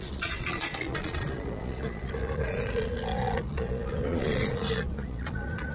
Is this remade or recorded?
remade